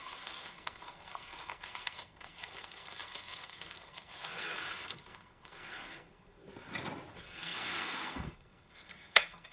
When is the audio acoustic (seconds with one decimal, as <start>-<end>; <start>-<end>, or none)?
6.5-7.1